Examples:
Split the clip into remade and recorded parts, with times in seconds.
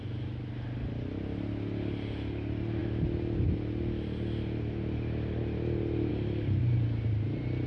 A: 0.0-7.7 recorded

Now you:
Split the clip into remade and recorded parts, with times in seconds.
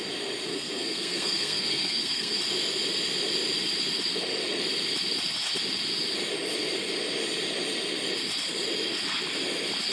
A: 0.0-0.5 recorded; 0.5-2.4 remade; 2.4-9.9 recorded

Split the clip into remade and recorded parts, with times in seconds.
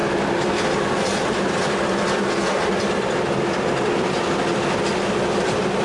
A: 0.0-5.8 recorded